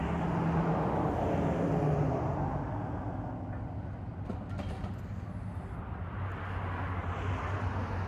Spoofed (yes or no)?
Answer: no